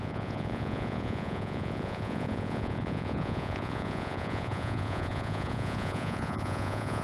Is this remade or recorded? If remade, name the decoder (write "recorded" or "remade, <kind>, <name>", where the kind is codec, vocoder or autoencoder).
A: remade, vocoder, Vocos